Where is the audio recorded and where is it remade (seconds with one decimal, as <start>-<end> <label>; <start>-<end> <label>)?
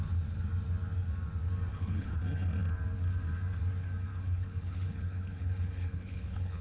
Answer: 0.0-1.7 recorded; 1.7-2.2 remade; 2.2-4.1 recorded; 4.1-6.6 remade